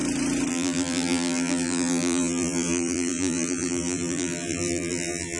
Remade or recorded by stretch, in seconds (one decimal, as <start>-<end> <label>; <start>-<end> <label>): 0.0-0.5 recorded; 0.5-5.4 remade

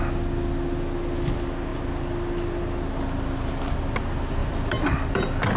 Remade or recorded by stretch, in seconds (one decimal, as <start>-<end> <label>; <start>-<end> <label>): 0.0-4.4 recorded; 4.4-4.9 remade; 4.9-5.6 recorded

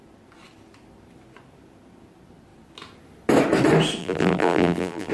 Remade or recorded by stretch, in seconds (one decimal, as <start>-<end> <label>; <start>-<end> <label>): 0.0-4.0 recorded; 4.0-5.1 remade

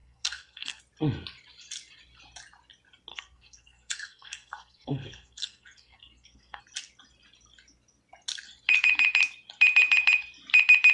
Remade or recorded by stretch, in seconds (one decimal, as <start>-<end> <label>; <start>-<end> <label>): 0.0-0.8 remade; 0.8-3.1 recorded; 3.1-6.6 remade; 6.6-10.9 recorded

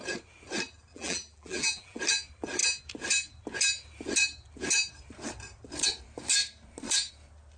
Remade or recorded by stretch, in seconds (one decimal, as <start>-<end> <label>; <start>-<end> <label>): 0.0-0.9 recorded; 0.9-2.0 remade; 2.0-7.6 recorded

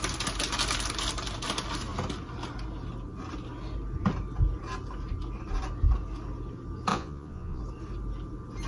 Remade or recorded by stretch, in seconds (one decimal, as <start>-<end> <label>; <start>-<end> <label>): 0.0-6.9 recorded; 6.9-7.6 remade; 7.6-8.7 recorded

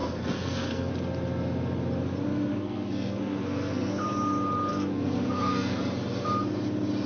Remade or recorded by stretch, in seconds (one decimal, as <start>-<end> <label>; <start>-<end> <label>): 0.0-0.9 remade; 0.9-2.5 recorded; 2.5-3.9 remade; 3.9-4.7 recorded; 4.7-5.8 remade; 5.8-7.1 recorded

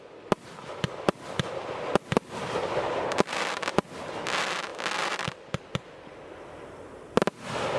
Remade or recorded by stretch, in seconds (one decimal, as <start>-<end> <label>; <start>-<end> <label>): 0.0-7.8 recorded